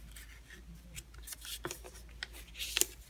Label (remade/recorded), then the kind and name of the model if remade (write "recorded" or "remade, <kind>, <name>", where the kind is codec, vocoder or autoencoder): recorded